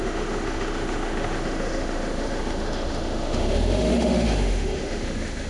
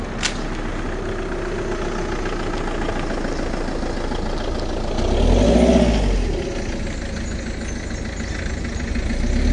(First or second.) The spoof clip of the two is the first